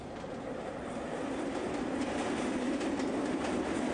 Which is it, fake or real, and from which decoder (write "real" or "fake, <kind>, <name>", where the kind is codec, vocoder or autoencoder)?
real